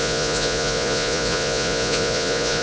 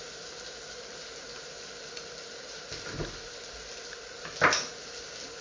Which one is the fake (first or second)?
first